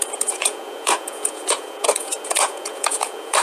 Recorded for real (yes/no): no